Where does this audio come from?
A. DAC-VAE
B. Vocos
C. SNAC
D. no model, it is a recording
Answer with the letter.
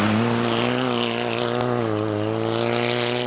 D